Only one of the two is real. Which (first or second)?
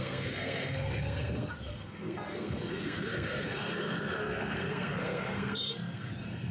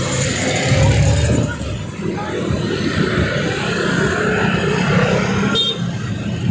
second